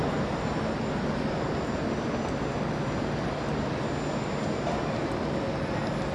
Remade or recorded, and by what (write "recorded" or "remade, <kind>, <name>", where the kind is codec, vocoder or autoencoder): recorded